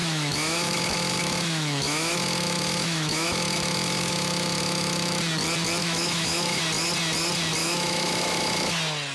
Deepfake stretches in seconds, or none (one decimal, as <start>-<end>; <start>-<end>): 0.0-5.2; 5.8-6.6; 7.6-8.7